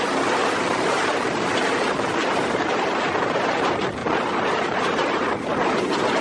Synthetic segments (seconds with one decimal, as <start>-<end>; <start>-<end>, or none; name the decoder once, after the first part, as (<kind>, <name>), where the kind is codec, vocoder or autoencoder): 0.0-6.2 (vocoder, BigVGAN v2)